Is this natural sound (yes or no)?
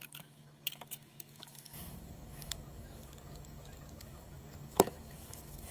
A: no